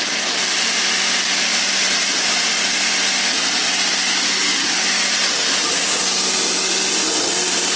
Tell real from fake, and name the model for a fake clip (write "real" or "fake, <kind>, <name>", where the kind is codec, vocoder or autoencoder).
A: real